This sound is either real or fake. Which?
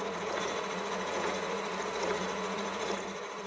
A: fake